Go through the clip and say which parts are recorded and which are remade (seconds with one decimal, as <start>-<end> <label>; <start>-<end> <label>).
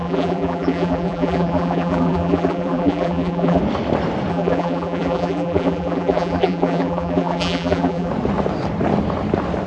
0.0-3.6 remade; 3.6-4.3 recorded; 4.3-8.1 remade; 8.1-9.7 recorded